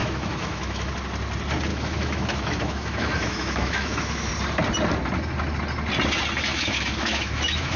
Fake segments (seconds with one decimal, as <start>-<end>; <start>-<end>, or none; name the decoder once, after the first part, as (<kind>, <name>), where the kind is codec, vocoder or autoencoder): 0.0-0.9 (autoencoder, DAC-VAE); 1.7-4.3; 6.5-7.8